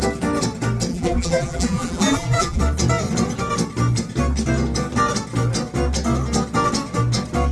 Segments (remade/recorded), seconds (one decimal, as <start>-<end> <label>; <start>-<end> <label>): 0.0-0.9 recorded; 0.9-2.6 remade; 2.6-7.5 recorded